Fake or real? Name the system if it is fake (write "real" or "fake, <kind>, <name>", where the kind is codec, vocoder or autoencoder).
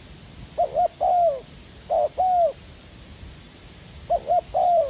real